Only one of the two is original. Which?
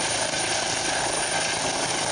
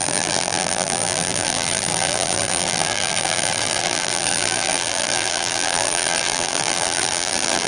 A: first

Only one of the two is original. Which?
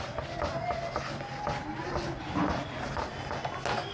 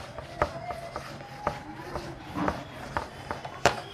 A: first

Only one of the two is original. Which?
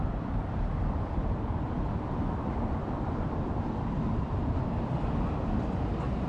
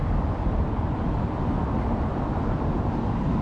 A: second